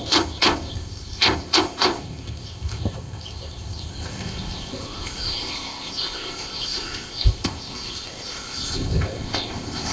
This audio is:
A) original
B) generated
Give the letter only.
B